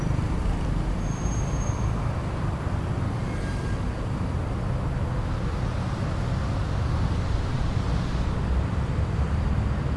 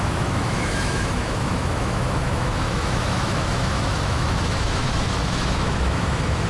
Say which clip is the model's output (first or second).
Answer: second